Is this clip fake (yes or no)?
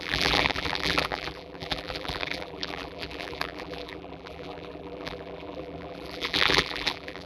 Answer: yes